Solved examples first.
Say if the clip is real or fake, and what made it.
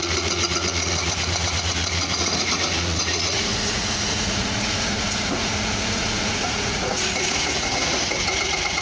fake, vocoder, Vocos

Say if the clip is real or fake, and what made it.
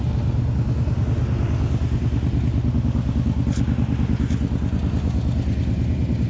real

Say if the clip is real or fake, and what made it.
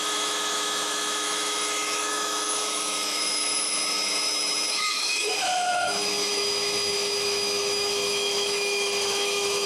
fake, autoencoder, DAC-VAE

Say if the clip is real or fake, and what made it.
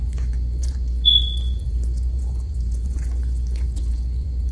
fake, vocoder, Vocos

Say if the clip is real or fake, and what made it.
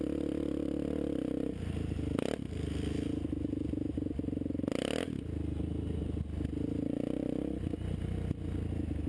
real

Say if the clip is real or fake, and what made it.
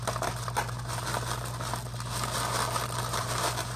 real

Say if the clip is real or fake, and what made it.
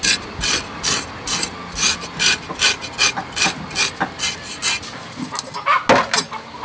real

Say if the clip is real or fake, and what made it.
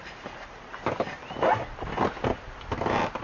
real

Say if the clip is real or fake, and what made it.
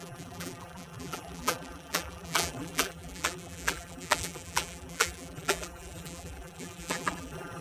fake, vocoder, BigVGAN v2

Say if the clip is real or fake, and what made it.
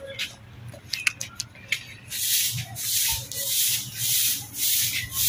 real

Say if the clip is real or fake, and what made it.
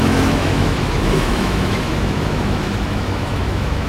fake, autoencoder, DAC-VAE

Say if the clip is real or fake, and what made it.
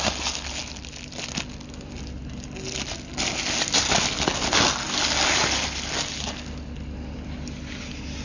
real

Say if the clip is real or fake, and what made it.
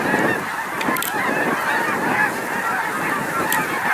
real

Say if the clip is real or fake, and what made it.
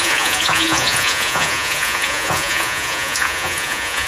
fake, vocoder, Vocos